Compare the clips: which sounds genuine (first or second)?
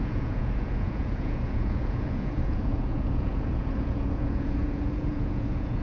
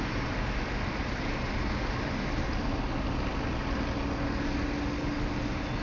second